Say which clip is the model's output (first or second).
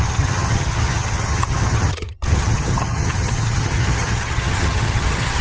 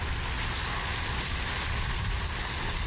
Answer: first